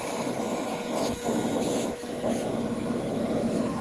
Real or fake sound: fake